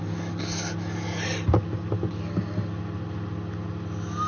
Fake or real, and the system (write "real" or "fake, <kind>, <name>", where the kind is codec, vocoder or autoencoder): real